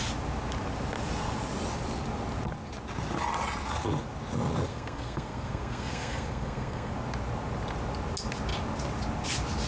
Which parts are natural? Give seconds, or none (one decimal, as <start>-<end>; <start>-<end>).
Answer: 0.0-4.7; 6.9-9.7